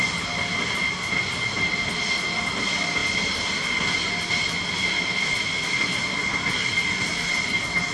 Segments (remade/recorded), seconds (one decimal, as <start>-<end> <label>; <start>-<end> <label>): 0.0-7.9 recorded